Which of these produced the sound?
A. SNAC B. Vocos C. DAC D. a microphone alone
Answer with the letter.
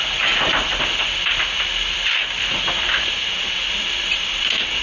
D